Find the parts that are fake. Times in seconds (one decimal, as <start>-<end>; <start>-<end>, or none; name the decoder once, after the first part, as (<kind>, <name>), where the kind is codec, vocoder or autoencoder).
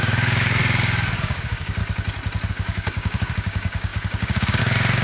0.0-0.6 (codec, DAC); 1.2-1.8; 2.5-5.0